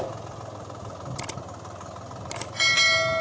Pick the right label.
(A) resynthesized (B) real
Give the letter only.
B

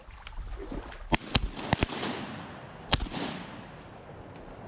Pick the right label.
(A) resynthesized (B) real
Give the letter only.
B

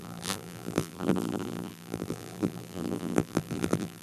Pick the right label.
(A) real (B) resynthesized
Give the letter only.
B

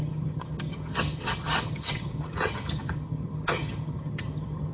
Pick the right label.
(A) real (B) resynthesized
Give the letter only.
B